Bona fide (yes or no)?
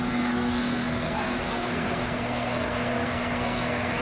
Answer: no